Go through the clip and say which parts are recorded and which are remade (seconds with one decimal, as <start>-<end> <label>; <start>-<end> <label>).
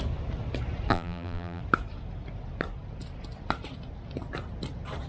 0.0-0.9 recorded; 0.9-1.6 remade; 1.6-5.1 recorded